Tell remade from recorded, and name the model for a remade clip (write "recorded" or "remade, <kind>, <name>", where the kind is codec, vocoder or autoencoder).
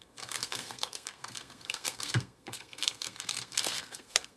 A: remade, codec, SNAC